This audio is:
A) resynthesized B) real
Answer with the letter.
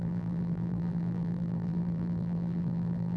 A